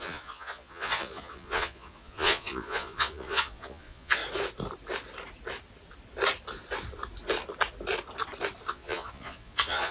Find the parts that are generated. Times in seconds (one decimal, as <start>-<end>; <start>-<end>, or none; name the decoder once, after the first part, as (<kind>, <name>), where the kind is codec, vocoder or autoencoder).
0.0-4.2 (vocoder, Vocos); 8.7-9.9